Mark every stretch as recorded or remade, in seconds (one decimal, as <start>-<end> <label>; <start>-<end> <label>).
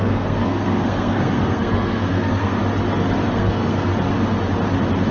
0.0-2.6 remade; 2.6-3.3 recorded; 3.3-3.9 remade; 3.9-5.1 recorded